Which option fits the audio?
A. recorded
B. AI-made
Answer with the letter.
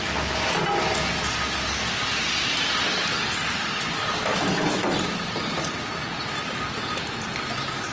A